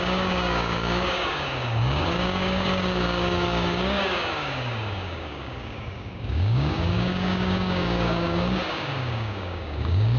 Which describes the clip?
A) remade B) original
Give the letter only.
A